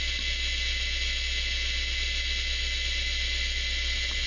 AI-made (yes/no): no